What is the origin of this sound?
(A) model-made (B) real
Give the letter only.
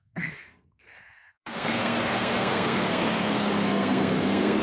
A